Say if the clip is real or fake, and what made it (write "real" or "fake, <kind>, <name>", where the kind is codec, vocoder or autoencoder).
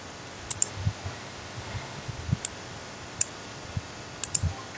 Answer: real